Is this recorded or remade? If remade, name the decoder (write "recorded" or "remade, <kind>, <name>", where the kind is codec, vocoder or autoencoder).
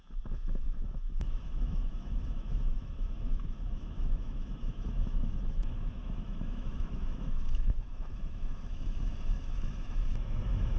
remade, autoencoder, DAC-VAE